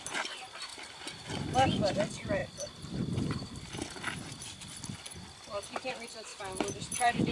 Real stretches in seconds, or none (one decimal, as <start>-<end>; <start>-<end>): 2.4-5.2